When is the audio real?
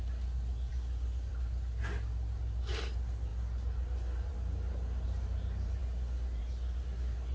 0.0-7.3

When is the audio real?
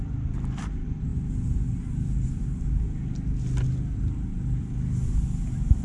0.0-5.8